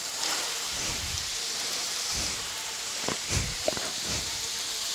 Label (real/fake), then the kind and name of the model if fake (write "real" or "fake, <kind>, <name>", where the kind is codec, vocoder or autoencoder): fake, vocoder, BigVGAN v2